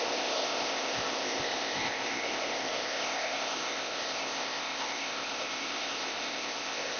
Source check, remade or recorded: remade